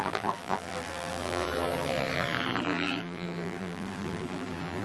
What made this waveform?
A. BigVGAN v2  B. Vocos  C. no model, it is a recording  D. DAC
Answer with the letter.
A